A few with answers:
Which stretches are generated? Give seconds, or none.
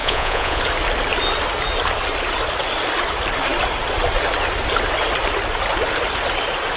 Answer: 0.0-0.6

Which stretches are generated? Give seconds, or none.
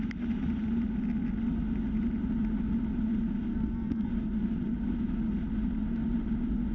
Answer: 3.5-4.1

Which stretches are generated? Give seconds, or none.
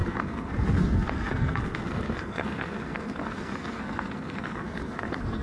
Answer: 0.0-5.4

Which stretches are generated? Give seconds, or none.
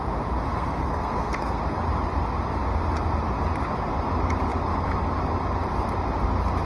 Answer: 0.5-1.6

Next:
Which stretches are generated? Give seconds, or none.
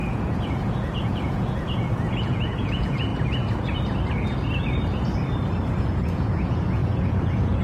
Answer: 0.0-3.1; 5.8-7.6